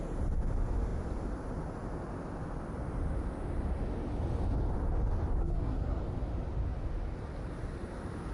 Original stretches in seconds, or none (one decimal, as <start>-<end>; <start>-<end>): 0.0-5.4; 6.0-8.3